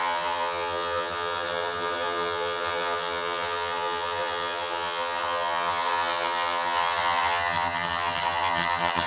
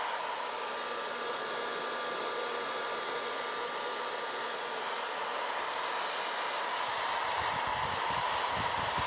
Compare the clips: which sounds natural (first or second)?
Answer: second